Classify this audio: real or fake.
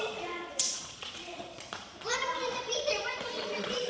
fake